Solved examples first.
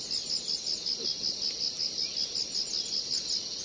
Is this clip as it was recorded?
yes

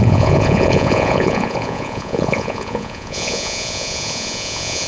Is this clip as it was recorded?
no